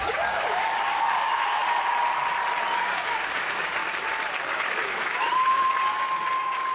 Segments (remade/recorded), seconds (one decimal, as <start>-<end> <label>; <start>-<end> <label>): 0.0-1.6 remade; 1.6-2.8 recorded; 2.8-3.8 remade; 3.8-4.4 recorded; 4.4-6.7 remade